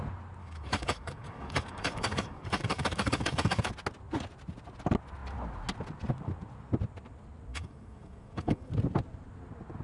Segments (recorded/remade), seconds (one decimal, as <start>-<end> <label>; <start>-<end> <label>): 0.0-0.4 recorded; 0.4-3.7 remade; 3.7-7.5 recorded; 7.5-8.7 remade; 8.7-9.8 recorded